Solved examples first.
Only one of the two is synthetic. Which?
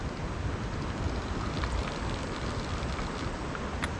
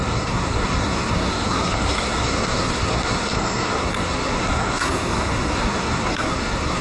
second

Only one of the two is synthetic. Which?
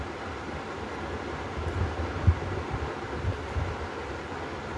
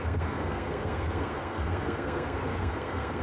second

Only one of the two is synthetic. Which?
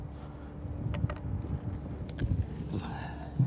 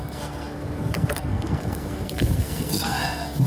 second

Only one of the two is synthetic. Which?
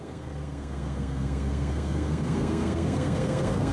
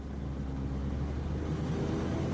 first